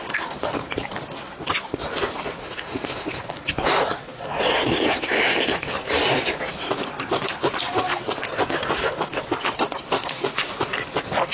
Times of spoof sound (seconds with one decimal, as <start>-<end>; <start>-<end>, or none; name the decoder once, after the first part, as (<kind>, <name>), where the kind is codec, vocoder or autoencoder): 2.4-3.1 (autoencoder, DAC-VAE)